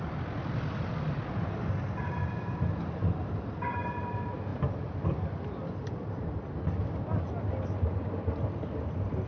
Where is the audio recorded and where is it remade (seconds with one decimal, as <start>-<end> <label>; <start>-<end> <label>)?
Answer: 0.0-4.5 recorded; 4.5-5.3 remade; 5.3-9.3 recorded